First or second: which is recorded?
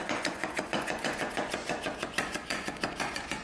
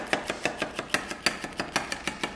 second